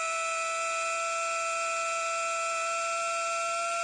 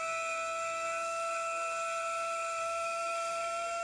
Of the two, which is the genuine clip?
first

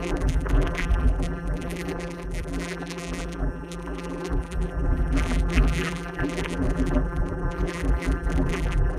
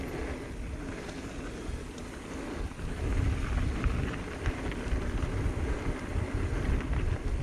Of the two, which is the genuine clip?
second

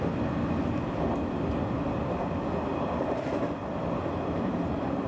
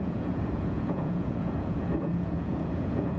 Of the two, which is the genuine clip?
first